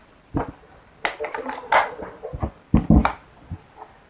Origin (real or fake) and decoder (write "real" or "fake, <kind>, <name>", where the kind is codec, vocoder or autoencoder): real